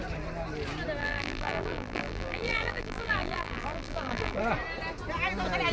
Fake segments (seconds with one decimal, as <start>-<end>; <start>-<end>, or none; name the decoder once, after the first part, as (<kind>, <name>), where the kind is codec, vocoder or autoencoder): 1.0-4.4 (vocoder, BigVGAN v2)